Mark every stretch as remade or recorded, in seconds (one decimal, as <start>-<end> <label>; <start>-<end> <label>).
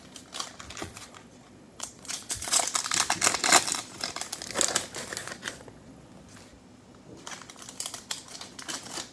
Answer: 0.0-0.8 recorded; 0.8-2.6 remade; 2.6-5.2 recorded; 5.2-6.1 remade; 6.1-9.1 recorded